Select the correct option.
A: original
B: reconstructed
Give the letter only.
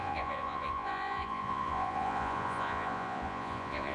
B